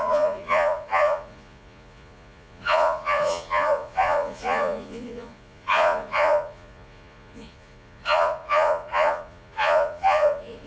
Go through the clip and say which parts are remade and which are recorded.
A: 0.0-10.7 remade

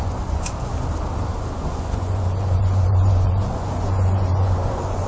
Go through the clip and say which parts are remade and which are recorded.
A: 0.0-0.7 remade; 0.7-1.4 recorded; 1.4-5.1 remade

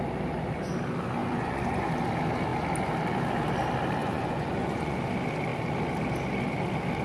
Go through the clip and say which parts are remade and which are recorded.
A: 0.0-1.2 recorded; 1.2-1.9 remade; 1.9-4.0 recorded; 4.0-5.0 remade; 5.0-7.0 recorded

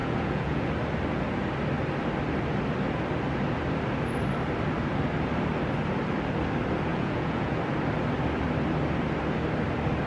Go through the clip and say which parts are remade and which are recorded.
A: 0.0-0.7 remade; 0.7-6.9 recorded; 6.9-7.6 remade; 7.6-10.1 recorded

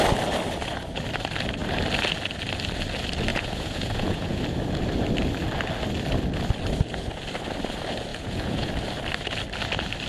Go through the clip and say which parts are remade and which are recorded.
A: 0.0-3.3 recorded; 3.3-4.4 remade; 4.4-8.1 recorded; 8.1-8.7 remade; 8.7-10.1 recorded